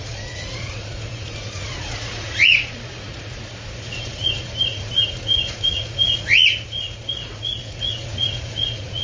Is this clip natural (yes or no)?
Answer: no